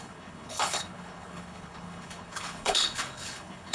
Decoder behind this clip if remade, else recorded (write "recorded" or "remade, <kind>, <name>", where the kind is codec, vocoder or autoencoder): remade, codec, HILCodec